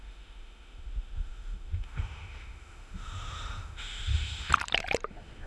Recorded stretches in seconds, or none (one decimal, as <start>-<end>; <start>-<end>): 4.5-5.1